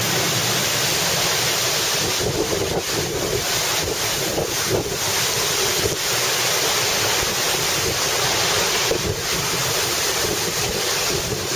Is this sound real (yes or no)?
yes